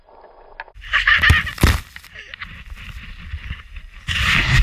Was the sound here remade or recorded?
recorded